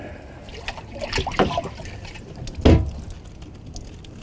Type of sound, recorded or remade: recorded